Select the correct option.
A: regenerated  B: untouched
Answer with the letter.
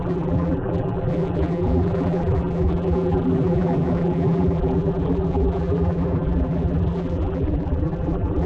A